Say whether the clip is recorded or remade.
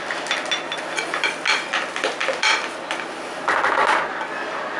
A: recorded